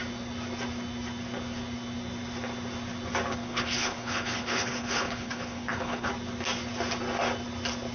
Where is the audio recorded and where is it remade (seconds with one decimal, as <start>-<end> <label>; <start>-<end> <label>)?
0.0-3.3 recorded; 3.3-6.1 remade; 6.1-7.9 recorded